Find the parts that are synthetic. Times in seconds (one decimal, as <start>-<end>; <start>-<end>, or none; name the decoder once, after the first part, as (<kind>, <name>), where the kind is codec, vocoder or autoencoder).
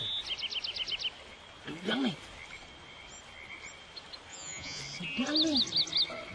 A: 4.3-4.8 (vocoder, Vocos)